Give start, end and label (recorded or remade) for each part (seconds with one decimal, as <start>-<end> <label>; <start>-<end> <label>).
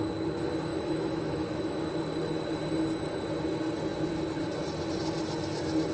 0.0-0.7 recorded; 0.7-1.9 remade; 1.9-5.9 recorded